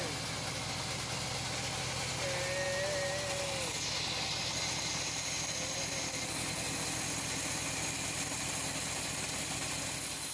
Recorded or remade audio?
recorded